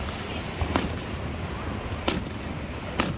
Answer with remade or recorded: remade